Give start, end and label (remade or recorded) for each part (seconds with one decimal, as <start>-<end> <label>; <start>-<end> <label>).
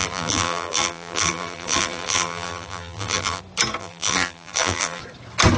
0.0-3.4 remade; 3.4-3.8 recorded; 3.8-5.0 remade; 5.0-5.6 recorded